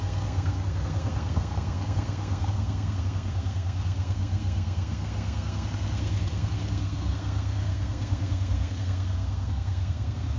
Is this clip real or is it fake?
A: fake